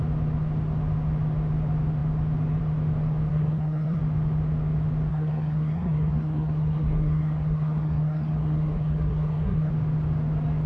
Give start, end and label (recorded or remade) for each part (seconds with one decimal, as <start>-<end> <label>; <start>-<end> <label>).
0.0-3.3 recorded; 3.3-4.0 remade; 4.0-5.1 recorded; 5.1-9.7 remade; 9.7-10.7 recorded